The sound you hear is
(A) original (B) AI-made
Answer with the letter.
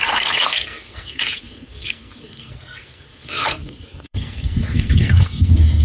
B